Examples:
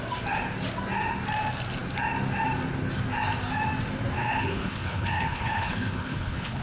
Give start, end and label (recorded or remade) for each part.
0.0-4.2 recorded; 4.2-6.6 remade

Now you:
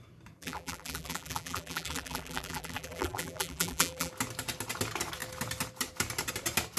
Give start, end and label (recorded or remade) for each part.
0.0-0.4 recorded; 0.4-4.1 remade; 4.1-6.8 recorded

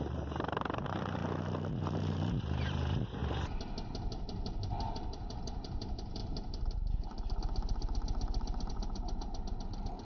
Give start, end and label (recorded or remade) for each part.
0.0-1.2 remade; 1.2-1.8 recorded; 1.8-3.2 remade; 3.2-4.9 recorded; 4.9-6.2 remade; 6.2-8.7 recorded; 8.7-10.0 remade

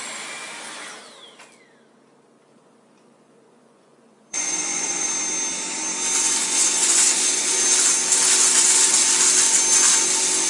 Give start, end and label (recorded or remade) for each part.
0.0-2.5 recorded; 2.5-5.1 remade; 5.1-6.4 recorded; 6.4-7.5 remade; 7.5-8.4 recorded; 8.4-8.9 remade; 8.9-10.5 recorded

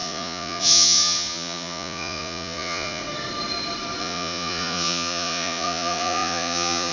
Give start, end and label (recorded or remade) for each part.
0.0-3.0 remade; 3.0-4.0 recorded; 4.0-6.9 remade